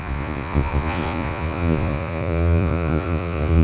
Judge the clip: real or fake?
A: fake